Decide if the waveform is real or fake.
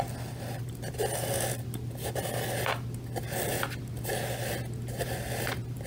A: real